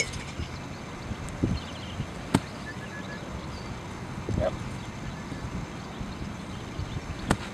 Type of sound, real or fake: real